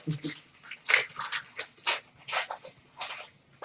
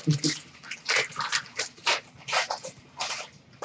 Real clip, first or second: first